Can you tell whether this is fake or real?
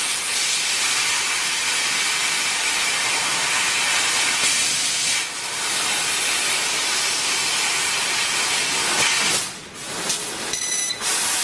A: real